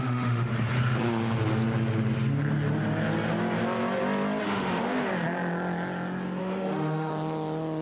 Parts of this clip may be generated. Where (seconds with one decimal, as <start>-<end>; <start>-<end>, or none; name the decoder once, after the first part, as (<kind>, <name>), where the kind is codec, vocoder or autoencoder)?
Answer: 0.0-0.5 (autoencoder, DAC-VAE); 4.4-5.1; 6.4-7.1